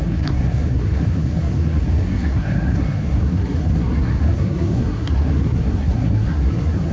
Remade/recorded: remade